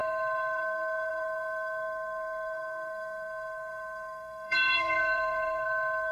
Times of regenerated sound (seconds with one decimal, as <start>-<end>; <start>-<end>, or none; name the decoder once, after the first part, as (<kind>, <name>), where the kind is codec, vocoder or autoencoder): 0.0-6.1 (codec, SNAC)